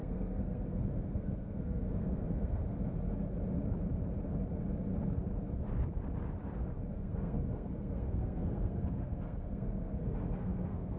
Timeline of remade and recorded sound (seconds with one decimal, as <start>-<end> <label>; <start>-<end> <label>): 0.0-2.6 remade; 2.6-6.9 recorded; 6.9-11.0 remade

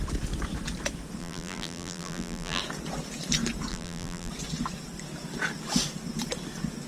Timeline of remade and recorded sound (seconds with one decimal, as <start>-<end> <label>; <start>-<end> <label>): 0.0-1.2 recorded; 1.2-2.6 remade; 2.6-3.7 recorded; 3.7-4.3 remade; 4.3-6.9 recorded

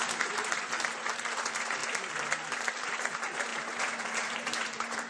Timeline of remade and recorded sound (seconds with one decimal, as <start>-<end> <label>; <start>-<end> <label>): 0.0-1.8 remade; 1.8-2.5 recorded; 2.5-5.1 remade

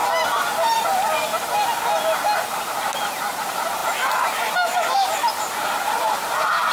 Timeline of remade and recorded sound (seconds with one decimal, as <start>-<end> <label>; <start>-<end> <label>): 0.0-2.6 recorded; 2.6-6.7 remade